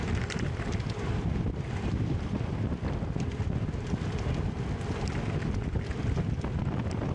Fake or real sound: real